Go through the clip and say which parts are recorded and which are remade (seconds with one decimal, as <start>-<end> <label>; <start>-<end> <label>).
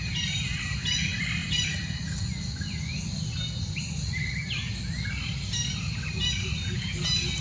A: 0.0-7.4 recorded